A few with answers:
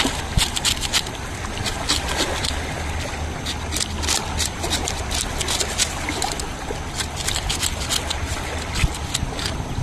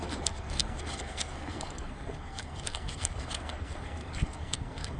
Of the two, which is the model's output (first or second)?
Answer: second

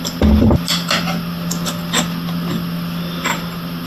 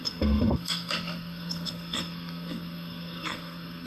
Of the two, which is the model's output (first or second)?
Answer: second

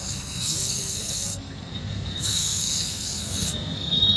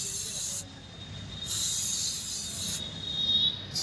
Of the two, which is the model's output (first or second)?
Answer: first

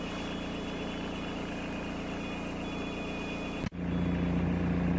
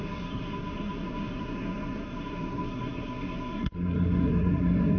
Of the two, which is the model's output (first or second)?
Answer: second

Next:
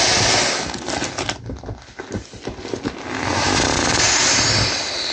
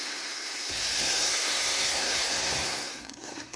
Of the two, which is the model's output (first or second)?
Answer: second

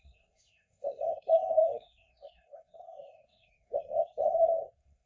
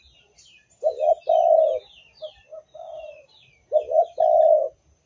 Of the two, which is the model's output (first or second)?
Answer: first